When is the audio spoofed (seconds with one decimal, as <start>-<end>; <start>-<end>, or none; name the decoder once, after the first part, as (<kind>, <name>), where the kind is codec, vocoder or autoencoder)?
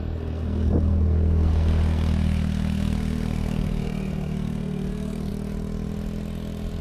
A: 0.0-5.3 (codec, SNAC)